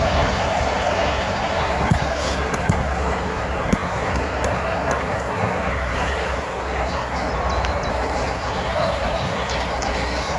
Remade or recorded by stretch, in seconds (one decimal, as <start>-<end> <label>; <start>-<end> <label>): 0.0-7.3 remade; 7.3-7.9 recorded; 7.9-10.4 remade